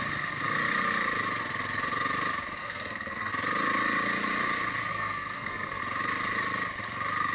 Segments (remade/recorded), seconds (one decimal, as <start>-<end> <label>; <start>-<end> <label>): 0.0-2.6 recorded; 2.6-3.3 remade; 3.3-4.9 recorded; 4.9-5.8 remade; 5.8-7.3 recorded